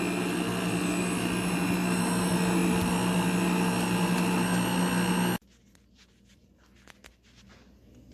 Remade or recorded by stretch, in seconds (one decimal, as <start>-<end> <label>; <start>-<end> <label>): 0.0-8.1 recorded